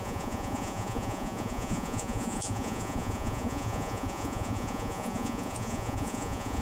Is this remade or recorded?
remade